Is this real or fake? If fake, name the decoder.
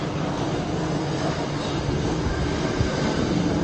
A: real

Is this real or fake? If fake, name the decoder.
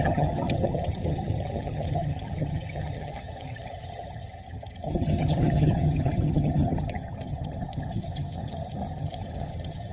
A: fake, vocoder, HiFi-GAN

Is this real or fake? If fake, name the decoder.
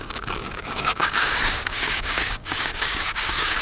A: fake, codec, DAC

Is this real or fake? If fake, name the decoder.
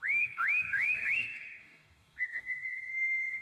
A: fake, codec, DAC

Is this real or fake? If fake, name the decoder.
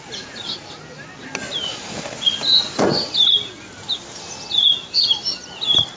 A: real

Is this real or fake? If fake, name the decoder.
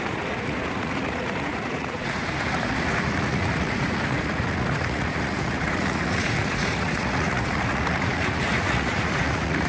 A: fake, vocoder, Vocos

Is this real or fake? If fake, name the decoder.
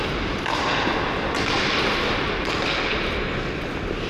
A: real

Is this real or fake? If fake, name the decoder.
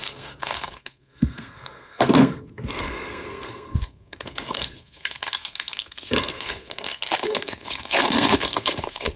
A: fake, codec, SNAC